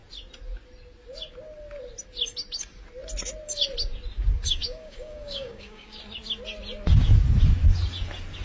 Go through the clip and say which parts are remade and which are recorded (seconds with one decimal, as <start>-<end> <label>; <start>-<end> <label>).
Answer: 0.0-4.6 recorded; 4.6-6.0 remade; 6.0-8.4 recorded